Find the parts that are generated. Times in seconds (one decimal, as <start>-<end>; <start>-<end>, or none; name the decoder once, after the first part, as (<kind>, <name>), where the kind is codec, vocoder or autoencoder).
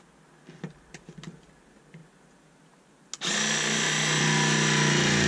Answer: none